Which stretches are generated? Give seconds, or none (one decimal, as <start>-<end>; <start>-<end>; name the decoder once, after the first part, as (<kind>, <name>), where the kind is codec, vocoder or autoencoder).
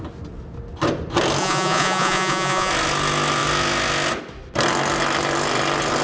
1.4-2.7 (vocoder, Vocos)